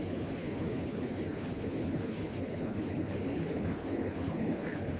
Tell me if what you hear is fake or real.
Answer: fake